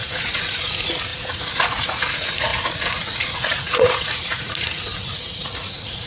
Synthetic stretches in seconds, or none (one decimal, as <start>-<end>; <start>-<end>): 0.0-6.1